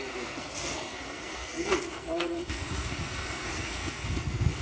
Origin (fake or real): fake